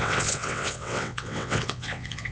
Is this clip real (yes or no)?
no